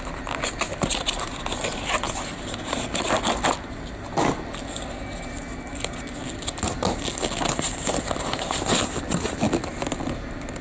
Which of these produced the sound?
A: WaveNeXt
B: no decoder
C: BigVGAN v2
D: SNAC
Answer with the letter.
B